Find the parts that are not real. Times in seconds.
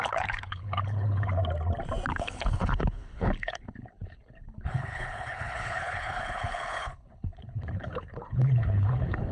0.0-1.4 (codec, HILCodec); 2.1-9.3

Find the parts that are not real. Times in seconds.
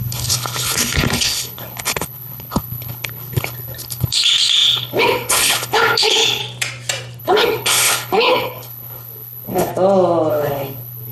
0.0-6.4 (codec, HILCodec); 7.2-9.7; 10.3-11.1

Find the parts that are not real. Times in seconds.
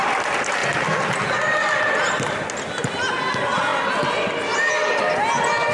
none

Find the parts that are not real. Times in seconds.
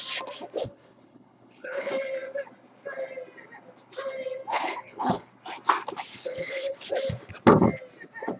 0.6-1.9 (codec, HILCodec); 4.5-5.3; 6.1-6.9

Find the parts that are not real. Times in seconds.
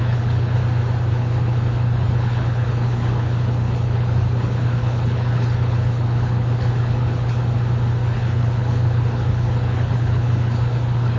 0.0-0.6 (codec, HILCodec); 1.1-7.4; 7.9-11.2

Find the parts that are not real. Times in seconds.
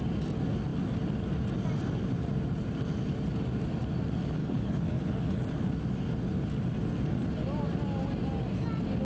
4.4-5.4 (codec, HILCodec)